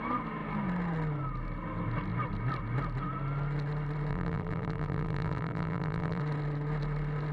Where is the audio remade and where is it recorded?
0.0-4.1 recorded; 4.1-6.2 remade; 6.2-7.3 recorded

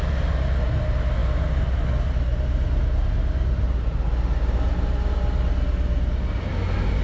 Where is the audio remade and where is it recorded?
0.0-7.0 recorded

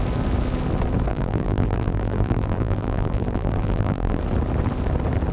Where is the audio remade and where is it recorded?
0.0-1.1 recorded; 1.1-4.2 remade; 4.2-5.3 recorded

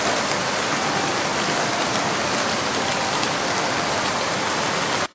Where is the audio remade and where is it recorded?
0.0-1.3 recorded; 1.3-4.4 remade; 4.4-5.1 recorded

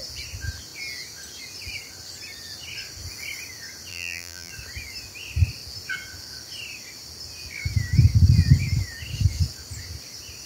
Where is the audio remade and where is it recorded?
0.0-3.9 recorded; 3.9-4.5 remade; 4.5-10.5 recorded

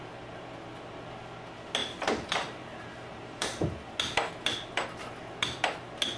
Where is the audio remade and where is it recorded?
0.0-1.8 recorded; 1.8-3.9 remade; 3.9-6.2 recorded